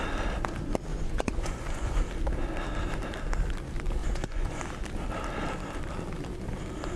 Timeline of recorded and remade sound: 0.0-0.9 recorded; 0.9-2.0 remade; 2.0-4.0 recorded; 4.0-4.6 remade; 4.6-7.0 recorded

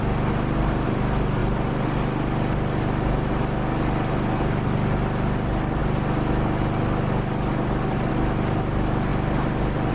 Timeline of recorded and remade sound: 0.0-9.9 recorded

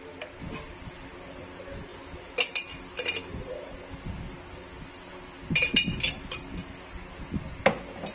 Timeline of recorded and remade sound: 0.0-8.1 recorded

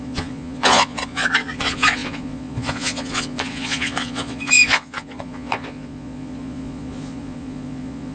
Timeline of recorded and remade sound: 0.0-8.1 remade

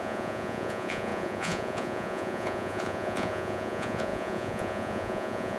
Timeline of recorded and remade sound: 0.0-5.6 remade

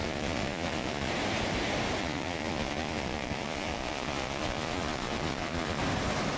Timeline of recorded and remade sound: 0.0-1.1 remade; 1.1-2.0 recorded; 2.0-5.8 remade; 5.8-6.4 recorded

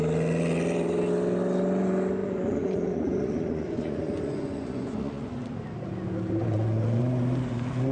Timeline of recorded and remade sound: 0.0-2.2 recorded; 2.2-5.4 remade; 5.4-6.4 recorded; 6.4-7.0 remade; 7.0-7.9 recorded